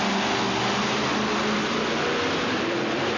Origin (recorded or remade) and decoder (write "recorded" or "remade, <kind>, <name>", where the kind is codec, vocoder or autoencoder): recorded